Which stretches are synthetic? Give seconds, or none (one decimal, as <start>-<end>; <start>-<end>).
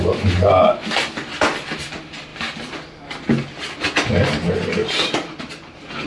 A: none